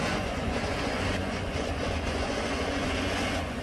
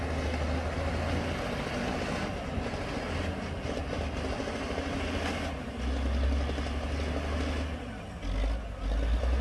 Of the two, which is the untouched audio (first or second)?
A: second